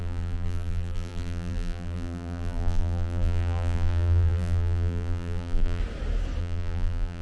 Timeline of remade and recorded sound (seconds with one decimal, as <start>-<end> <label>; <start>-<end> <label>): 0.0-5.8 remade; 5.8-6.4 recorded; 6.4-7.2 remade